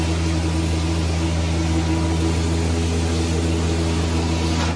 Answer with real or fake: real